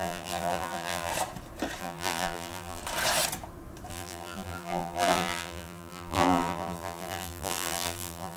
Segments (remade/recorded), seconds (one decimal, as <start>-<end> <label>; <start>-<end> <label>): 0.0-1.1 remade; 1.1-1.8 recorded; 1.8-2.8 remade; 2.8-3.9 recorded; 3.9-8.4 remade